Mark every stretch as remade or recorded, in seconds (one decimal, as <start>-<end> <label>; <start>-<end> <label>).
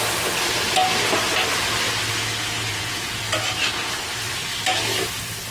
0.0-2.7 recorded; 2.7-3.2 remade; 3.2-5.5 recorded